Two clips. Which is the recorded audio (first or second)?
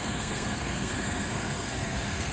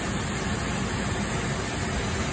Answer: second